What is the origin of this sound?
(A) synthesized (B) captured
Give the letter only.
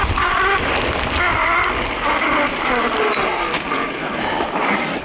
B